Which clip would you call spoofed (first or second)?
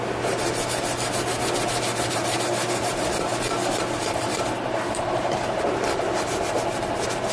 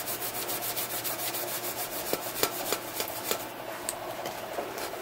first